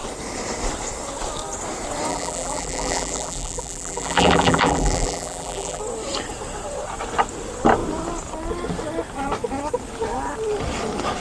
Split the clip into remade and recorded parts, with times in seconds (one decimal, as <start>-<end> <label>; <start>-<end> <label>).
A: 0.0-2.1 recorded; 2.1-5.8 remade; 5.8-11.2 recorded